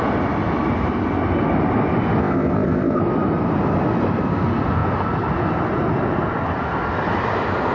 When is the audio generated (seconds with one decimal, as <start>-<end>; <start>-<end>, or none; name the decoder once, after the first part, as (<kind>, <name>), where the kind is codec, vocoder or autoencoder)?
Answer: 2.2-3.0 (codec, ZipCodec)